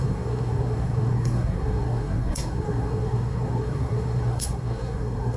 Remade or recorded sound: remade